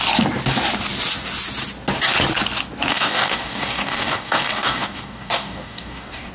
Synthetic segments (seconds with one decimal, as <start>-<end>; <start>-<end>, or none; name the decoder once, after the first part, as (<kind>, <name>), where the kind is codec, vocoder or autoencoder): 2.9-6.3 (codec, DAC)